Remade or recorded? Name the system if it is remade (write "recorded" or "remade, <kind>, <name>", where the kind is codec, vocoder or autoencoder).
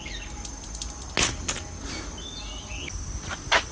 recorded